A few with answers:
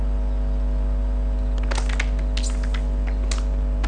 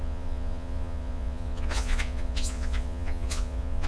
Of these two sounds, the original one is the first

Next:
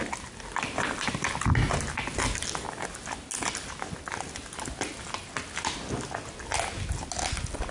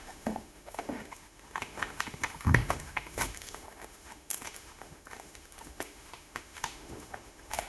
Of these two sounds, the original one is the first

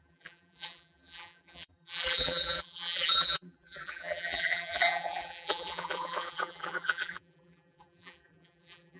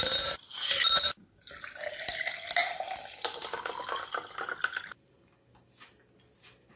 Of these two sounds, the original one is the second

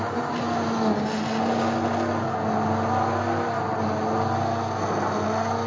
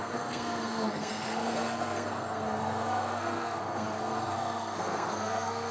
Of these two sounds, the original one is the first